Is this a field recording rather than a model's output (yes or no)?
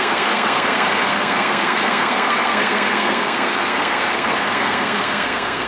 no